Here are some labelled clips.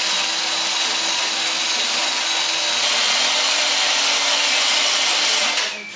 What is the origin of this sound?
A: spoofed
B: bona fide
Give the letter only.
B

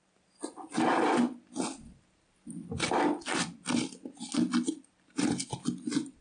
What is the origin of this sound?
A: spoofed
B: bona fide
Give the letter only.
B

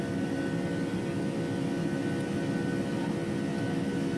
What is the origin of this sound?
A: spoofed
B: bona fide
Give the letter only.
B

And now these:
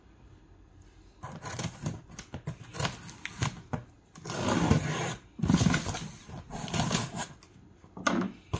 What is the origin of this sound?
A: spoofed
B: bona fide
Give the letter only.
B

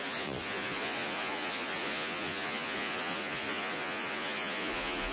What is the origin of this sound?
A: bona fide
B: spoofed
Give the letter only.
B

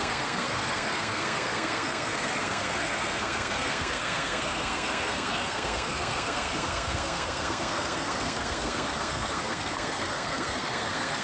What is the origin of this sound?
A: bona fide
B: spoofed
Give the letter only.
B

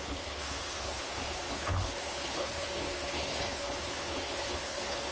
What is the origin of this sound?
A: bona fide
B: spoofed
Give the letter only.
B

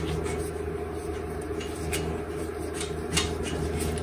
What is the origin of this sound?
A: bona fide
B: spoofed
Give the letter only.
A